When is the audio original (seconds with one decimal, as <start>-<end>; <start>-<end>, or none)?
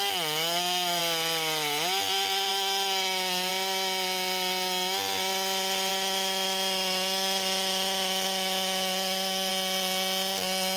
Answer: 1.0-2.5; 3.5-5.9; 9.5-10.8